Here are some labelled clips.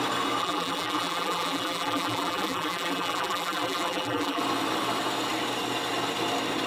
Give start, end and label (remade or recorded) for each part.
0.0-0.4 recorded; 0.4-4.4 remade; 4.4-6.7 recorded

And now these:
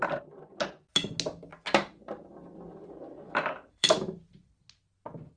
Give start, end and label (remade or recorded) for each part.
0.0-1.5 recorded; 1.5-4.5 remade; 4.5-5.4 recorded

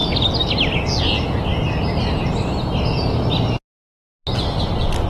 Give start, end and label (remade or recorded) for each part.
0.0-5.1 recorded

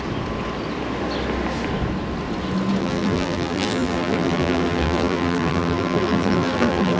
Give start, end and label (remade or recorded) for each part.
0.0-2.8 recorded; 2.8-7.0 remade

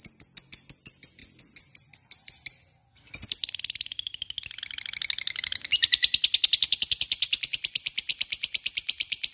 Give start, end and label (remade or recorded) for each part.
0.0-9.3 recorded